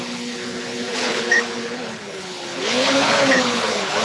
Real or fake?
fake